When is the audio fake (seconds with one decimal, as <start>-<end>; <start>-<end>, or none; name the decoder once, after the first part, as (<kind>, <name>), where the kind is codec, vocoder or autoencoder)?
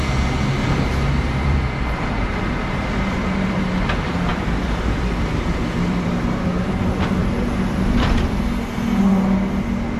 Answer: 0.6-3.6 (vocoder, BigVGAN v2); 4.3-6.7; 7.2-8.2